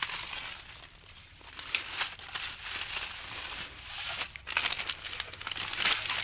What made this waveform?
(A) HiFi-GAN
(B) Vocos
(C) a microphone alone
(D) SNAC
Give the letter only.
C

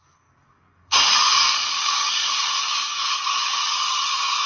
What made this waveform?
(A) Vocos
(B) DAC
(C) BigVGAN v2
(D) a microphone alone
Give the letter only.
B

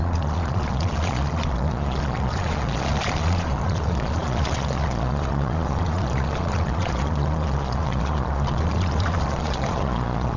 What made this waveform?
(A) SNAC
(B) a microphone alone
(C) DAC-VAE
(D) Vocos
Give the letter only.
D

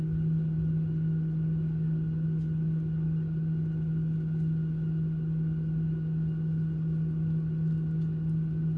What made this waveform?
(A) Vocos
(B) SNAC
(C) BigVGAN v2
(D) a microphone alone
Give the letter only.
D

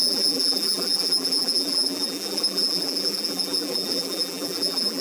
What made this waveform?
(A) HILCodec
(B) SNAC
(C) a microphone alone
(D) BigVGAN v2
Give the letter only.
D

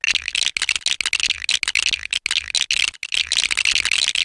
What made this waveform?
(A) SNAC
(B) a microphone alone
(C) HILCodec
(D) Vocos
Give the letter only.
B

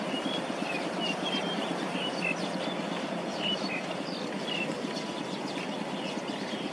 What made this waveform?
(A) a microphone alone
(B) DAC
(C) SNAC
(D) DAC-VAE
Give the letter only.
A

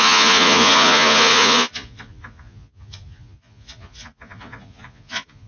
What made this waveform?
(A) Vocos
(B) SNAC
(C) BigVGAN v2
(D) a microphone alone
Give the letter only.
A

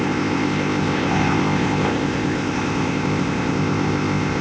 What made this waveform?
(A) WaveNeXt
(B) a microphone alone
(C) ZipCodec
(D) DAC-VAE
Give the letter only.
C